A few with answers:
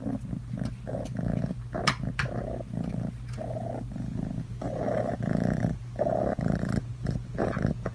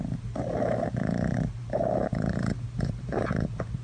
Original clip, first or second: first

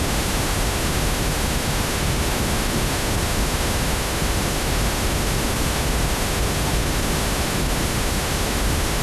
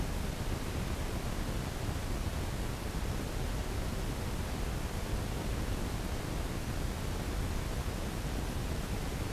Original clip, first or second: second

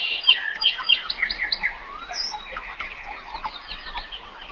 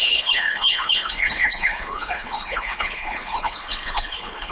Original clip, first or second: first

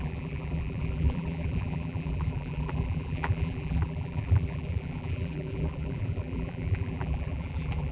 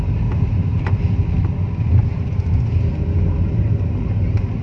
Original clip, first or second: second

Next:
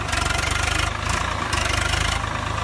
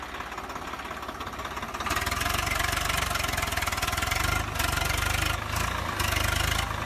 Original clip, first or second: second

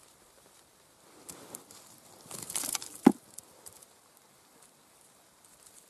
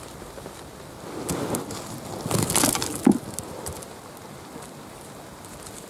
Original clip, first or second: second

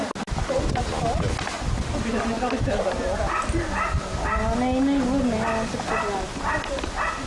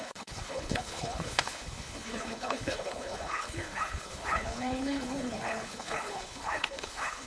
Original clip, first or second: first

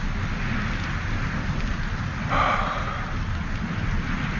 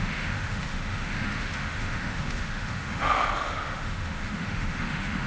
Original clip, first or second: first